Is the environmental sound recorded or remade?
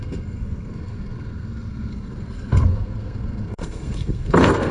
remade